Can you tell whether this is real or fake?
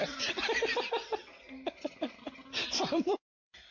real